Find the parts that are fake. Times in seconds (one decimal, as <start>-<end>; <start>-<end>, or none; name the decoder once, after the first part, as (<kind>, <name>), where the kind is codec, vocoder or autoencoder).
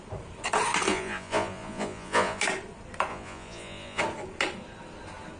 0.9-2.4 (vocoder, Vocos); 3.1-4.0